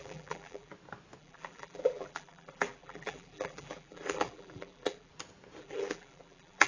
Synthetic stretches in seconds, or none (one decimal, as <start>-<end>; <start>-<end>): 0.0-0.7; 1.2-5.1; 5.6-6.7